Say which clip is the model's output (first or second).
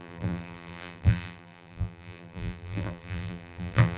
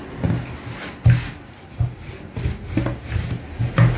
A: first